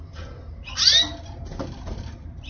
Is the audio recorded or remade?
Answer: recorded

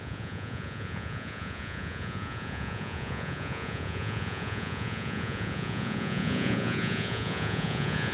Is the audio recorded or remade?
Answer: remade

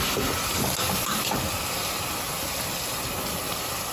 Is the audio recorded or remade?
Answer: recorded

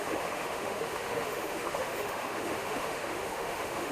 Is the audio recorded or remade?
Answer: remade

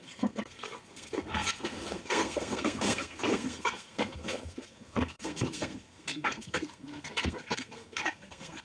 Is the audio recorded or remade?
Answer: remade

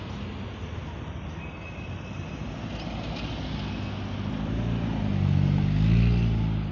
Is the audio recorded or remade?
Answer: recorded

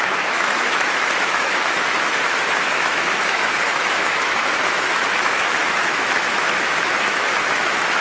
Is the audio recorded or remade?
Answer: remade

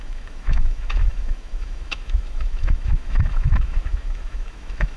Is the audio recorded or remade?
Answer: remade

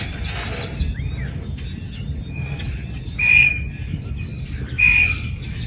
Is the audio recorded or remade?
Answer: recorded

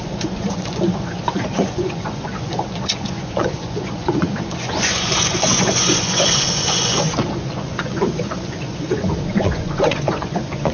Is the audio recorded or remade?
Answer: remade